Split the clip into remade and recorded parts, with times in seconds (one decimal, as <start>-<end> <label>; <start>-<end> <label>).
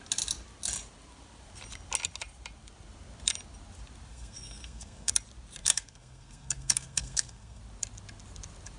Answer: 0.0-4.1 recorded; 4.1-5.1 remade; 5.1-5.6 recorded; 5.6-7.6 remade; 7.6-8.8 recorded